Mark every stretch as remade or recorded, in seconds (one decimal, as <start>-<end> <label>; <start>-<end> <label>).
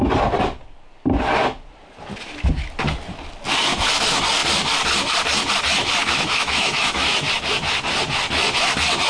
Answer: 0.0-6.0 recorded; 6.0-7.3 remade; 7.3-9.1 recorded